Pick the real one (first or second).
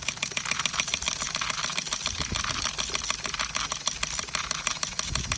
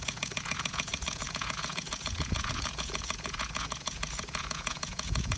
first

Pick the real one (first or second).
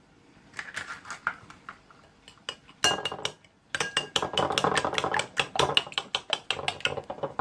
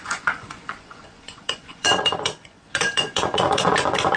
first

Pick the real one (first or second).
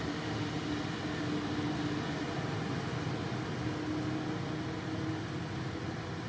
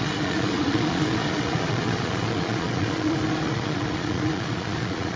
first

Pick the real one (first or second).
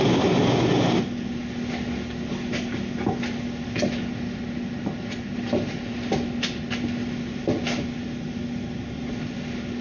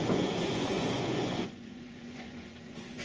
first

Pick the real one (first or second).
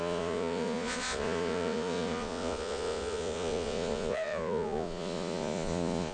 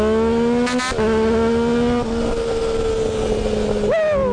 second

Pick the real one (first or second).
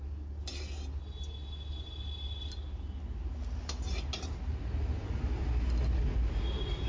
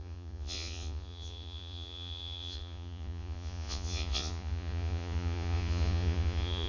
first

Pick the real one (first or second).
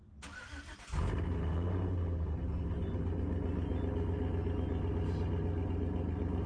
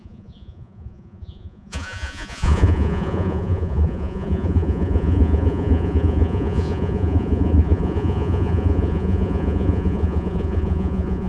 first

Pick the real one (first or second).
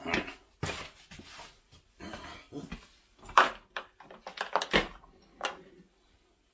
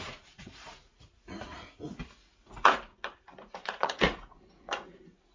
first